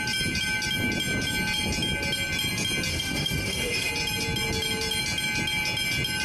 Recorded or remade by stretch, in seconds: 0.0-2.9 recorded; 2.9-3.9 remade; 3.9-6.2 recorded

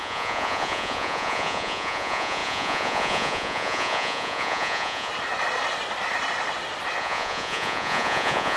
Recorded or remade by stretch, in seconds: 0.0-5.1 remade; 5.1-7.0 recorded; 7.0-8.6 remade

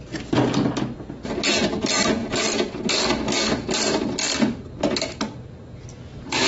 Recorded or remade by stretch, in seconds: 0.0-6.5 recorded

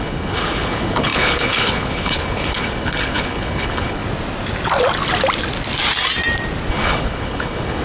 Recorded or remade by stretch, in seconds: 0.0-4.0 remade; 4.0-6.7 recorded; 6.7-7.8 remade

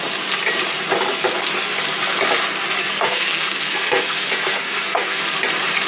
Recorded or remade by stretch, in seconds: 0.0-2.8 recorded; 2.8-5.2 remade; 5.2-5.9 recorded

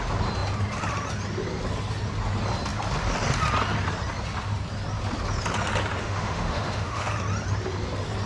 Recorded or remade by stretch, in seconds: 0.0-6.0 recorded; 6.0-7.1 remade; 7.1-8.3 recorded

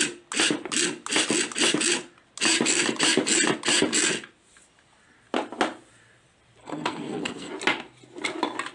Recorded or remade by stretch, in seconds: 0.0-6.6 recorded; 6.6-7.5 remade; 7.5-8.7 recorded

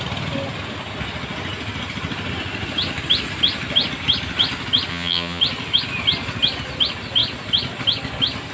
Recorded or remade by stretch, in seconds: 0.0-4.9 recorded; 4.9-5.4 remade; 5.4-8.5 recorded